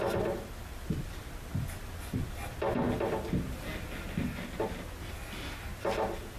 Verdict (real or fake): real